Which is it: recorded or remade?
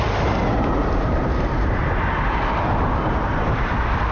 remade